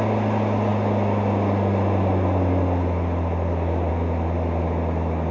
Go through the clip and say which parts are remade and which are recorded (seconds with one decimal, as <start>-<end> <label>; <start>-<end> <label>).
0.0-5.3 recorded